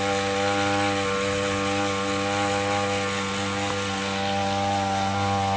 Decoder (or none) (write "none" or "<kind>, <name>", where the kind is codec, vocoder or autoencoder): none